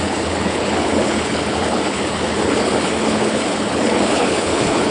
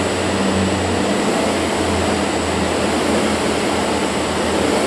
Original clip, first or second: second